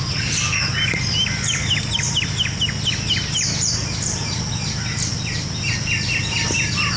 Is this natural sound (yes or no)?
yes